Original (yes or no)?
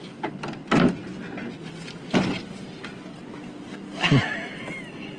yes